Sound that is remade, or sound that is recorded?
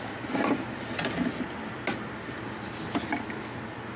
recorded